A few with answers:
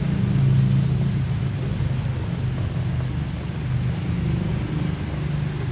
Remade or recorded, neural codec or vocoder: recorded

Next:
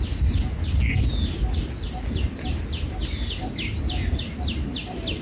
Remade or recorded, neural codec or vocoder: recorded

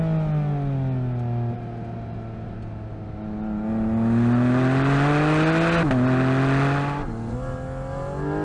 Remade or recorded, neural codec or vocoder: recorded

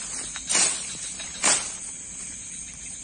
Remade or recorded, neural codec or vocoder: recorded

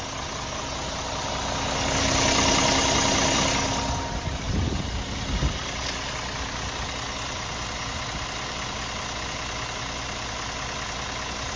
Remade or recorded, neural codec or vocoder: recorded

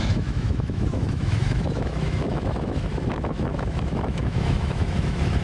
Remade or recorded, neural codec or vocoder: remade, autoencoder, DAC-VAE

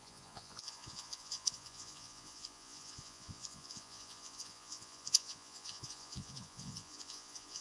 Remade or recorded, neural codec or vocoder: remade, vocoder, Vocos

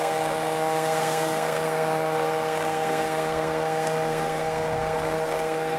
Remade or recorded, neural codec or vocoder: remade, codec, SNAC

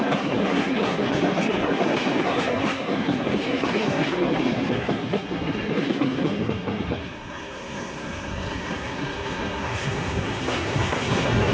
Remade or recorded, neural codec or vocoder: remade, codec, SNAC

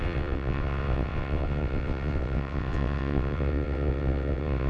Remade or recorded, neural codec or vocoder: remade, vocoder, WaveNeXt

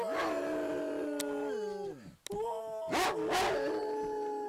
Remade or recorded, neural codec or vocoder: recorded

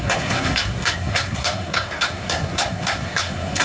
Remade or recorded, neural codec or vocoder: remade, codec, SNAC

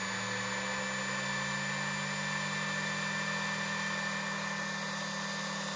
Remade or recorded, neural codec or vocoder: recorded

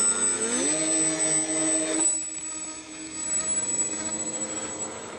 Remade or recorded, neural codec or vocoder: recorded